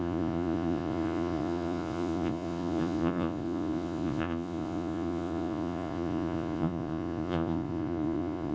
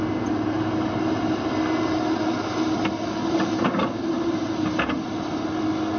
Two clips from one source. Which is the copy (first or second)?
first